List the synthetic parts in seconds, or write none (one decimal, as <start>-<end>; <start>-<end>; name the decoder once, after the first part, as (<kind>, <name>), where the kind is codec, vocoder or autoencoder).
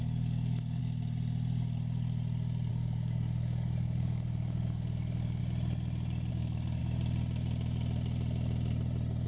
0.0-0.8 (codec, DAC); 2.7-5.4; 6.3-6.8